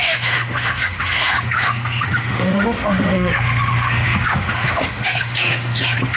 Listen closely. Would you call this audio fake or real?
fake